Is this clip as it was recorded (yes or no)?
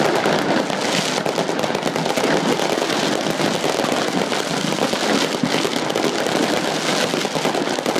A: yes